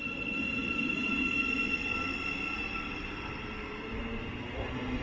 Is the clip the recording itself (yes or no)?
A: yes